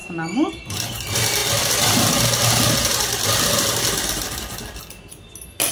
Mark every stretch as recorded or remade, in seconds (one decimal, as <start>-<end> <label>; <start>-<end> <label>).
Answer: 0.0-5.7 recorded